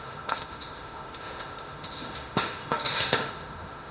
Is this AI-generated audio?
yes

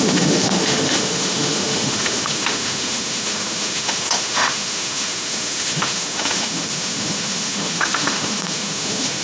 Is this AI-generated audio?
yes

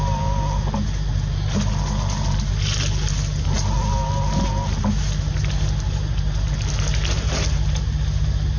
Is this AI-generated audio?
no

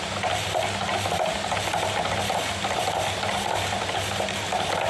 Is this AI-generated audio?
no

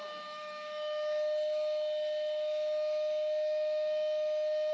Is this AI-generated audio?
yes